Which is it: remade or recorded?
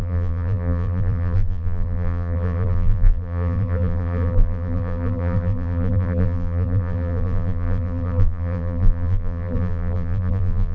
remade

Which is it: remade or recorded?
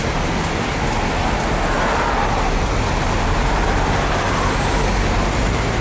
recorded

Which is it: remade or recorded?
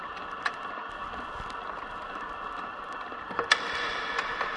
recorded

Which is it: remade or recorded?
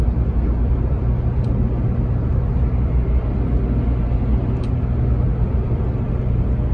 recorded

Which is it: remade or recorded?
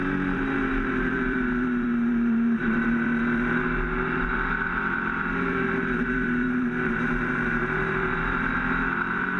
remade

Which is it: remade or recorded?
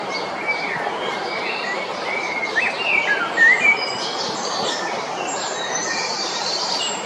remade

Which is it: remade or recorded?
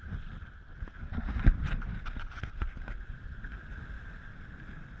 recorded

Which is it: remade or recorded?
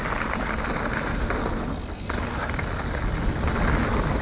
recorded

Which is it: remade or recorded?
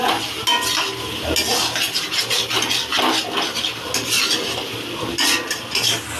recorded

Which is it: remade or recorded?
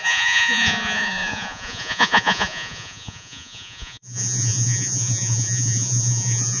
remade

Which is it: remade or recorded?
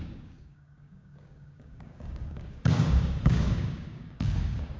remade